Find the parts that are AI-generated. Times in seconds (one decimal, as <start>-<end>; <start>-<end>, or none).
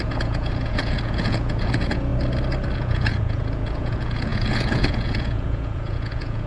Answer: 0.0-2.1; 2.8-6.5